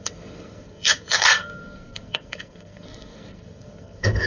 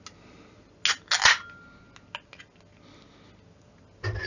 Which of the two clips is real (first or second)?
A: second